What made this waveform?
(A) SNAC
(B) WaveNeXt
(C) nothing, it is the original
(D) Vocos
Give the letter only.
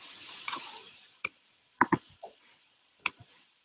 D